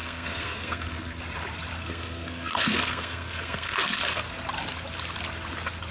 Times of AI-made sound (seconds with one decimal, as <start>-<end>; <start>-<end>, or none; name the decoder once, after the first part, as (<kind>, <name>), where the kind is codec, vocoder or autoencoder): 0.0-1.2 (codec, SNAC); 1.8-4.2